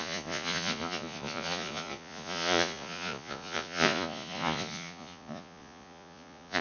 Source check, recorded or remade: remade